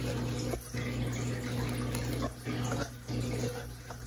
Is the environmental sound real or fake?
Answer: real